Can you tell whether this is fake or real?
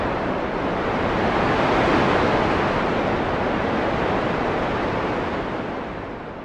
real